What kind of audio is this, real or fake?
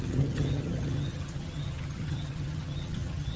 fake